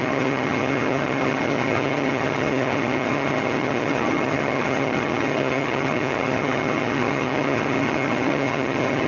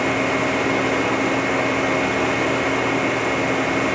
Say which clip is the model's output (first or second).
first